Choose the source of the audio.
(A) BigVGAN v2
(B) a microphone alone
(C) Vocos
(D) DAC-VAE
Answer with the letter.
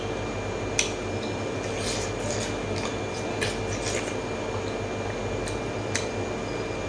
B